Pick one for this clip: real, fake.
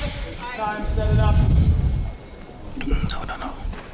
real